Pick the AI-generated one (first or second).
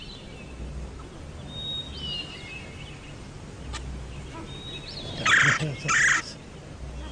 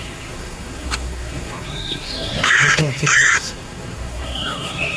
second